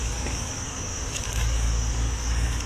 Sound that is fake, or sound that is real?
fake